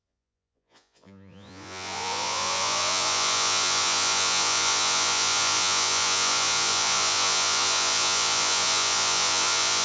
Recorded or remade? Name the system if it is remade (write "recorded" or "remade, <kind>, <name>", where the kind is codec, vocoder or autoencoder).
remade, vocoder, Vocos